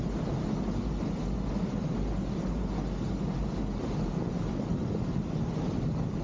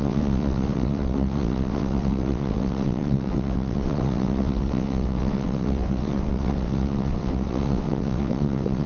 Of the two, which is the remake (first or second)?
second